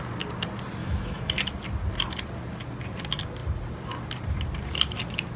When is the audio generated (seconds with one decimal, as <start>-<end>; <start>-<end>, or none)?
0.8-1.4